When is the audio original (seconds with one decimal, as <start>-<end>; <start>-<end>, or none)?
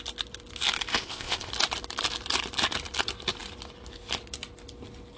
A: 0.0-0.9; 1.5-5.2